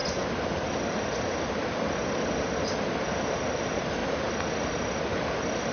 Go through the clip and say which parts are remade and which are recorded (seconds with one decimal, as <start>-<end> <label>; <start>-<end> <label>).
0.0-5.7 recorded